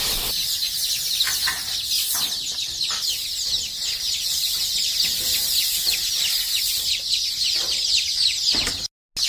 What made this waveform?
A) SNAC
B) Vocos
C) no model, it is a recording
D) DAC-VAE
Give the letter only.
C